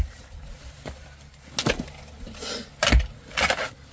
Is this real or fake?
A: real